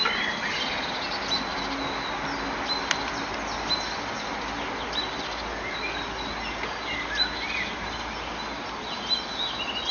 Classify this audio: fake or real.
real